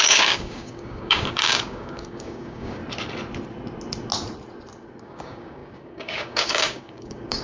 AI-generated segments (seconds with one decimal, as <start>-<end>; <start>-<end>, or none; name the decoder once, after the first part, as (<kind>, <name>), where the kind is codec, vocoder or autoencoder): 0.0-2.8 (codec, DAC); 5.0-7.4